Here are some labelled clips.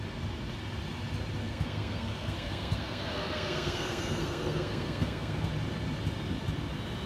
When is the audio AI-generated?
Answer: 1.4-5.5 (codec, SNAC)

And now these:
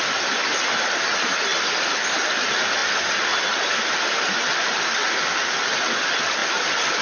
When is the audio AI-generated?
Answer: 6.4-7.0 (vocoder, BigVGAN v2)

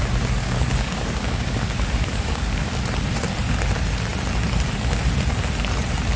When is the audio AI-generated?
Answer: 0.4-2.8 (codec, DAC)

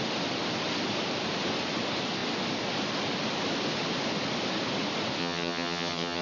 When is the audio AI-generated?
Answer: 5.2-6.2 (vocoder, HiFi-GAN)